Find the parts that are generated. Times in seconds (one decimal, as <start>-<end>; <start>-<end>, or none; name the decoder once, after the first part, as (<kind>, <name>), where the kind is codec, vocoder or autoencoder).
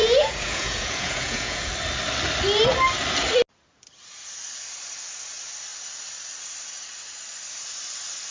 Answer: 0.0-1.7 (vocoder, Vocos)